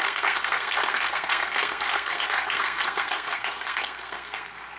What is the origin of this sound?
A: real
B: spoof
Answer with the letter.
B